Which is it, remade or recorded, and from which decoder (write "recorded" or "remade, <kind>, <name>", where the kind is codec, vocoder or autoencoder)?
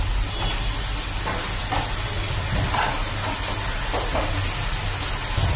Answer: recorded